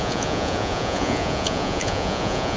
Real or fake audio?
fake